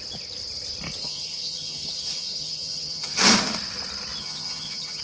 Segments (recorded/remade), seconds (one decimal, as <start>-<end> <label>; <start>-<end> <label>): 0.0-1.0 recorded; 1.0-3.2 remade; 3.2-4.2 recorded; 4.2-5.0 remade